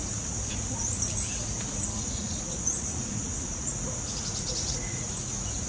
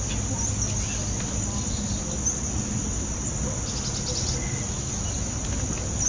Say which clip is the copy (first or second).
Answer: first